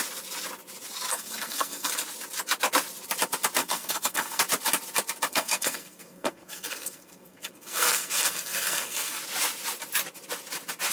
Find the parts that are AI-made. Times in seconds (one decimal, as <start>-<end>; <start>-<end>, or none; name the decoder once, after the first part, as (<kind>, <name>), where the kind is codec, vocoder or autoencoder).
1.1-1.9 (codec, SNAC); 3.6-4.4; 5.3-9.2